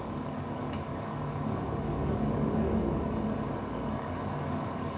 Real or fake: fake